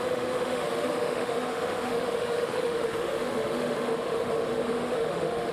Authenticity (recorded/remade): remade